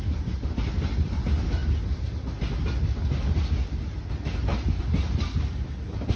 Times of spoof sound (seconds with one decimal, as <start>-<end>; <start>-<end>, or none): none